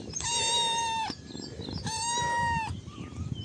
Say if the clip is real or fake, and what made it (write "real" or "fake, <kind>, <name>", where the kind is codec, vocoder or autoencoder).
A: real